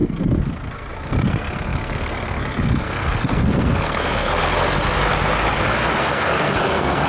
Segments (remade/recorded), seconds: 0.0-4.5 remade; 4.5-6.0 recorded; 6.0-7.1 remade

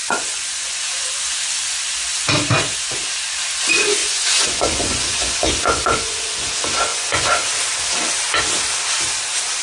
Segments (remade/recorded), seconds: 0.0-1.0 remade; 1.0-4.0 recorded; 4.0-6.5 remade; 6.5-6.9 recorded; 6.9-7.5 remade; 7.5-9.6 recorded

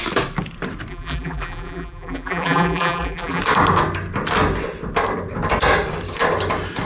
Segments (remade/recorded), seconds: 0.0-0.9 recorded; 0.9-3.4 remade; 3.4-6.9 recorded